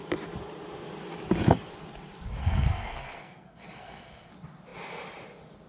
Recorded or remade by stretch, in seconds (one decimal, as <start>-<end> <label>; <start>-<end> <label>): 0.0-2.4 recorded; 2.4-4.3 remade; 4.3-5.7 recorded